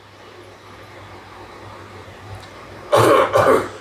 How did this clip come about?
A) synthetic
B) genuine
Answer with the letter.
B